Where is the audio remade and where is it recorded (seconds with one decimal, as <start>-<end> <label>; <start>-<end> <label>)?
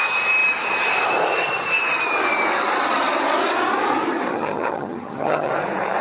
0.0-4.3 recorded; 4.3-5.5 remade; 5.5-6.0 recorded